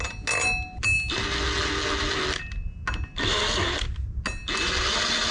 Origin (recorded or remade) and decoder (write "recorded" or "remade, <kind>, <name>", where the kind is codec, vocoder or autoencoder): recorded